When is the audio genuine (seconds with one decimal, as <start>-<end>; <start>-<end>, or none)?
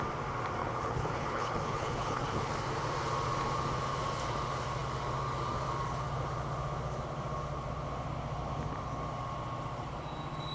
0.0-0.6; 2.5-10.5